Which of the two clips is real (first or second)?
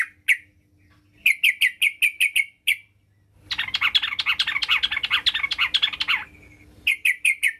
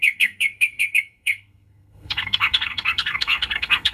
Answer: first